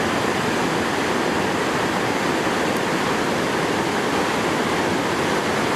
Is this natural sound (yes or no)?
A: yes